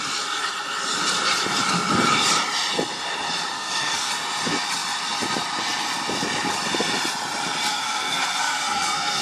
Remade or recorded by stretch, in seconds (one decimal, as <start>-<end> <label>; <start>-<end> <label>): 0.0-3.5 recorded; 3.5-4.1 remade; 4.1-7.7 recorded; 7.7-9.2 remade